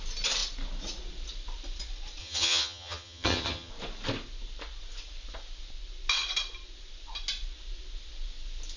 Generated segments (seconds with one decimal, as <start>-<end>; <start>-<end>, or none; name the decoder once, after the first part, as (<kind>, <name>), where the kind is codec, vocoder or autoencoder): 2.2-3.7 (vocoder, HiFi-GAN)